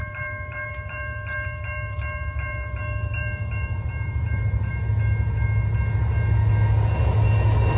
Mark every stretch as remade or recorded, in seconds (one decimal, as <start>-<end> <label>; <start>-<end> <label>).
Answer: 0.0-4.7 remade; 4.7-7.8 recorded